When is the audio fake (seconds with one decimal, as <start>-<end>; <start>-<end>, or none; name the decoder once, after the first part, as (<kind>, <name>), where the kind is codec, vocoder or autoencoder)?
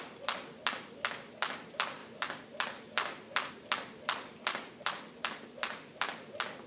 none